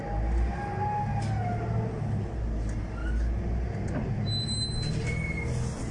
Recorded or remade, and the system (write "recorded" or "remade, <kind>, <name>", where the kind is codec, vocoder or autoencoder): recorded